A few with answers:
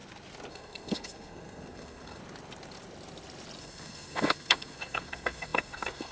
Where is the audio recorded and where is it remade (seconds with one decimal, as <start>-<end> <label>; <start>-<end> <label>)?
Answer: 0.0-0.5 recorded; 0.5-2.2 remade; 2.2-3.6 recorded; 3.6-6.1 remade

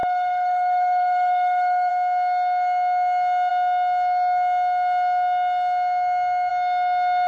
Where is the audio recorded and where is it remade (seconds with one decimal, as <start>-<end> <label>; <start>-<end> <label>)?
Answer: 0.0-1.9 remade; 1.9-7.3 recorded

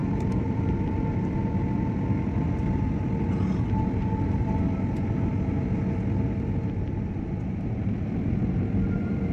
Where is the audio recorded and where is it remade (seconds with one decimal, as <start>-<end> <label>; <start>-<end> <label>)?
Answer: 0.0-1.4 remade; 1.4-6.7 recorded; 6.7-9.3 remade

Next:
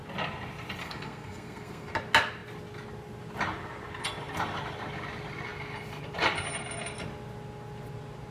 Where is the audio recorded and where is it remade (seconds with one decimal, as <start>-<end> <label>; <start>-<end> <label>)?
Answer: 0.0-0.8 recorded; 0.8-1.9 remade; 1.9-8.3 recorded